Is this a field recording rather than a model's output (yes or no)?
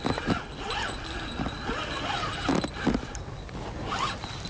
yes